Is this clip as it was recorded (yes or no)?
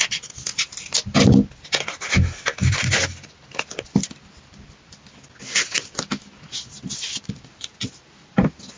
yes